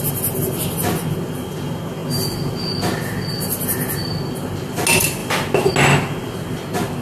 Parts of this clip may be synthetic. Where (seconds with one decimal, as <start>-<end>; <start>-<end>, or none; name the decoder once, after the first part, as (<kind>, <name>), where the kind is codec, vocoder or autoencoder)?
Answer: none